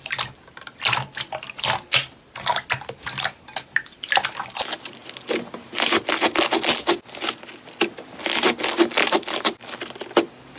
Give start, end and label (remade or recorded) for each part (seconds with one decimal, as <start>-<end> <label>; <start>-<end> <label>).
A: 0.0-10.6 recorded